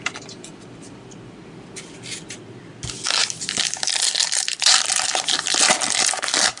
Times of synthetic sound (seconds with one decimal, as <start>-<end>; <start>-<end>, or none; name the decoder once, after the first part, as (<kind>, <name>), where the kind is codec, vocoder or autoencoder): none